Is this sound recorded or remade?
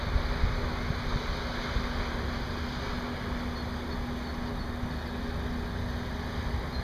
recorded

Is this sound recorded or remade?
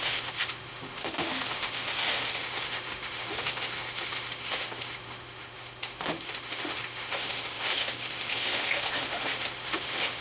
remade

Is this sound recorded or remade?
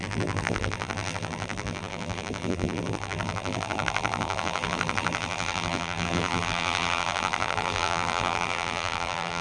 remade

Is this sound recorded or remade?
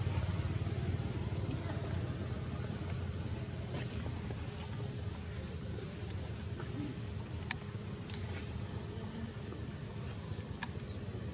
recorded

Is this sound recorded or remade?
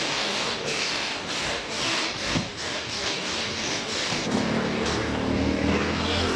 remade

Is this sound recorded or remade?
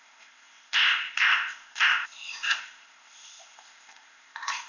remade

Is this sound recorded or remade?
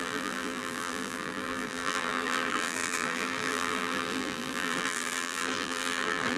remade